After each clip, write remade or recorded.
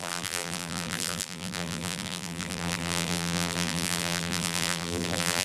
remade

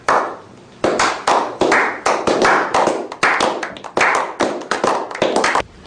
recorded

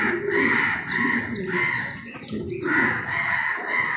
recorded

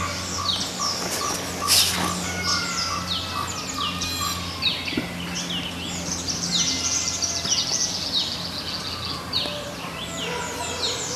recorded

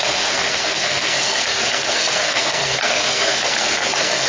remade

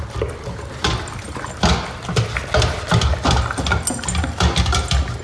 recorded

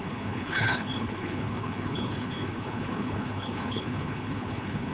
remade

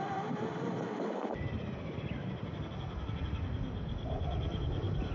recorded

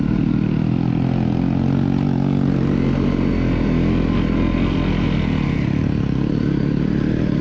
recorded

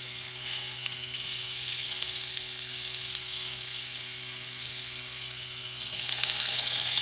remade